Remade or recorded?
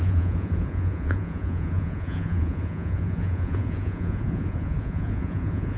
remade